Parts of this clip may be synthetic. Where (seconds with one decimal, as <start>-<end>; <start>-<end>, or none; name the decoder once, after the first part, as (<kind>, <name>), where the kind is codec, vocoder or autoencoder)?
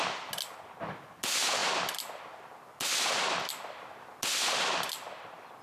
none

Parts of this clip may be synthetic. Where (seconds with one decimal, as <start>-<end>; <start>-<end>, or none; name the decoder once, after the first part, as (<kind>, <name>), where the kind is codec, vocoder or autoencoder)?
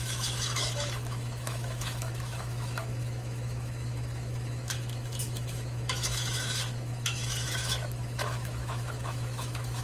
0.0-9.8 (autoencoder, DAC-VAE)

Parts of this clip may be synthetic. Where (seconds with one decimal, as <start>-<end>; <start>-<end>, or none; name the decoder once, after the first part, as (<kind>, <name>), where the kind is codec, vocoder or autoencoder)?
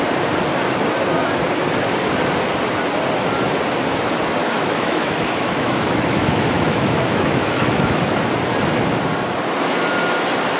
4.4-8.0 (autoencoder, DAC-VAE)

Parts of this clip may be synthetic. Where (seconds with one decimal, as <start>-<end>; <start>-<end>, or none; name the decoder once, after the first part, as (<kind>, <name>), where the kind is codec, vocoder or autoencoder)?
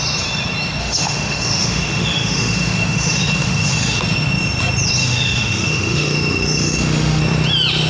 0.8-4.0 (autoencoder, DAC-VAE); 5.0-7.2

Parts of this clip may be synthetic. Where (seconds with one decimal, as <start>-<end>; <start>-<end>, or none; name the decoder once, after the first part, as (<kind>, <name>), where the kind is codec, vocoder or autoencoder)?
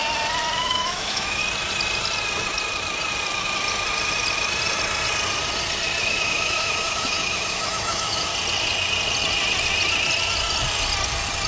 0.6-1.4 (autoencoder, DAC-VAE); 6.0-8.3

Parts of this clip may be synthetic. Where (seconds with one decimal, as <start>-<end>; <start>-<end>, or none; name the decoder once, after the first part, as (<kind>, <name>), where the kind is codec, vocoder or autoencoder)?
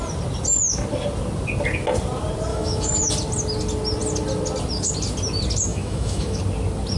2.5-3.1 (autoencoder, DAC-VAE); 5.7-6.4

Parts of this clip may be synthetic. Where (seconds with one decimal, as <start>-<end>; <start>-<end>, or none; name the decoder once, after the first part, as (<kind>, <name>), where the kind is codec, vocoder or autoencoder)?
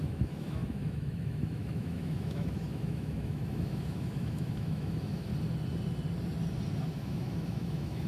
0.0-5.3 (autoencoder, DAC-VAE); 6.9-8.1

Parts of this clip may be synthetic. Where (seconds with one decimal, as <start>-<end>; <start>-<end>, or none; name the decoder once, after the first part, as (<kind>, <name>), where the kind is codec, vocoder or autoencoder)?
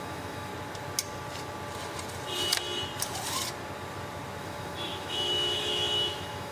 0.0-0.5 (autoencoder, DAC-VAE); 4.4-6.5